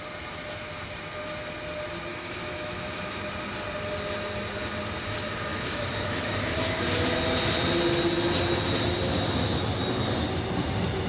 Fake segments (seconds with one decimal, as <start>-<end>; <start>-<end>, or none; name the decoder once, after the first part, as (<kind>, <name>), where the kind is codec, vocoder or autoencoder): 2.1-3.2 (autoencoder, DAC-VAE); 5.5-6.4